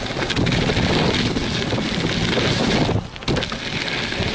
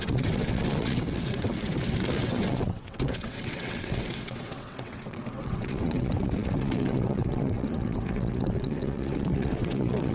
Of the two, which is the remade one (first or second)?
second